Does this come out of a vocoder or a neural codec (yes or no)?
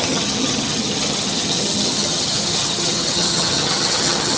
yes